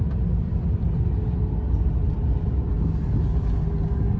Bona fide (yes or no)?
yes